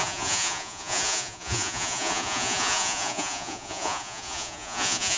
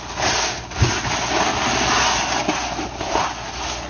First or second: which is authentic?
second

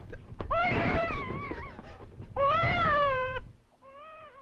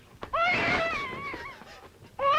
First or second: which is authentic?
second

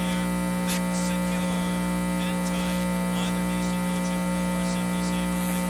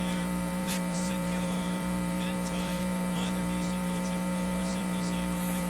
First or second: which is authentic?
first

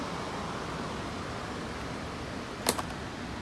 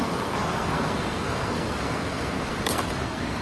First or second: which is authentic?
first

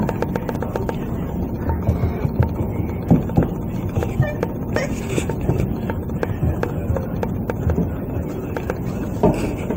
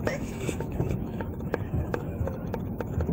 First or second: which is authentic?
first